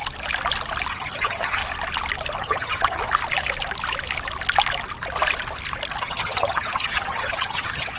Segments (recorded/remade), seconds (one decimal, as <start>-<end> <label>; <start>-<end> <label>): 0.0-0.9 recorded; 0.9-1.6 remade; 1.6-2.4 recorded; 2.4-3.0 remade; 3.0-6.0 recorded; 6.0-8.0 remade

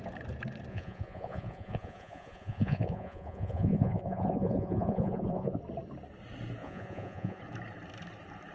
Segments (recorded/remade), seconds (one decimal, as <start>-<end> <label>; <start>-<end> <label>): 0.0-0.7 recorded; 0.7-5.6 remade; 5.6-6.6 recorded; 6.6-7.4 remade; 7.4-8.5 recorded